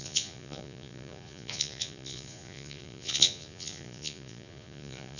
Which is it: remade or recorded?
remade